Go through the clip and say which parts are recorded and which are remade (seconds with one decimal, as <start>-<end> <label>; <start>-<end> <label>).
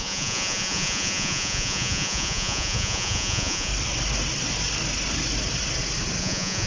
0.0-3.7 remade; 3.7-6.2 recorded; 6.2-6.7 remade